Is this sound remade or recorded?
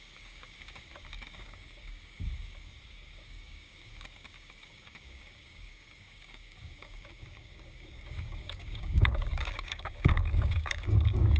remade